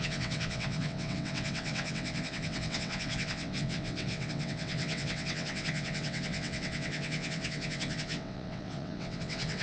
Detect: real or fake fake